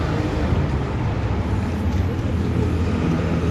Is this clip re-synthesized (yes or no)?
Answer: no